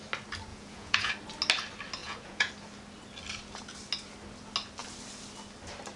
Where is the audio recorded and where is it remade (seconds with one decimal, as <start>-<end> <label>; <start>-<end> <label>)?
0.0-0.5 recorded; 0.5-1.1 remade; 1.1-2.0 recorded; 2.0-2.5 remade; 2.5-6.0 recorded